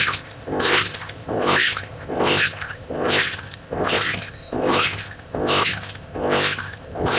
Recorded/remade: remade